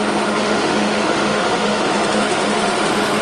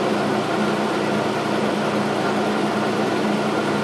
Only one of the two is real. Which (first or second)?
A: second